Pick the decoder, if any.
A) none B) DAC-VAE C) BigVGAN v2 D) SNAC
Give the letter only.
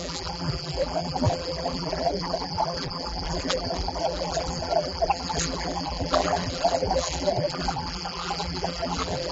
C